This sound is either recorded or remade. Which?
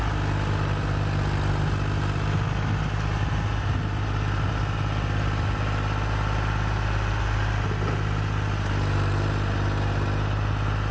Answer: recorded